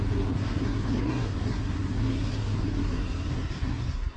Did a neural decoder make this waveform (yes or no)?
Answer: yes